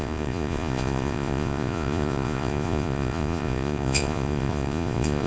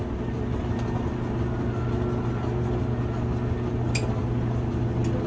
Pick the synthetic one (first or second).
first